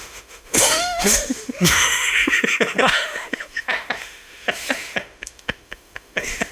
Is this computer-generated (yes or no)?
yes